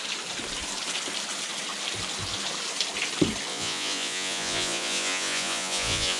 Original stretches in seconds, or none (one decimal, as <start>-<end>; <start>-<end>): 0.0-3.5